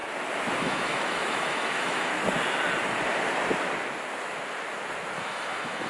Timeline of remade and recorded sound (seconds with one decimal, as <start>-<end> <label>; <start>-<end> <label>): 0.0-0.6 recorded; 0.6-2.1 remade; 2.1-5.2 recorded; 5.2-5.9 remade